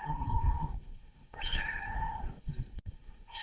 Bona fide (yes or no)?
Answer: no